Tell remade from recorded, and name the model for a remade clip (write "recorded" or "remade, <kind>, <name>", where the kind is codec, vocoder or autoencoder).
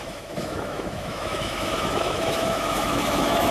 remade, autoencoder, DAC-VAE